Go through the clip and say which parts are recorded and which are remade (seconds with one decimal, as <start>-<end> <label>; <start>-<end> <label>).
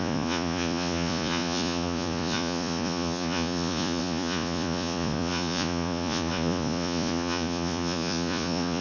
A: 0.0-8.8 remade